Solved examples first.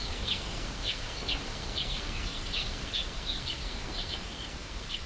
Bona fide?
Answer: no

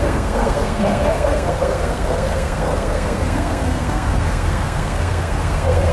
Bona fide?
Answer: no